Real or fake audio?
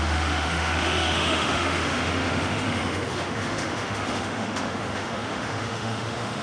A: fake